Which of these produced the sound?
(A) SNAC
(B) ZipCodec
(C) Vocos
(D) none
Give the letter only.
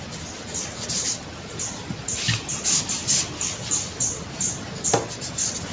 D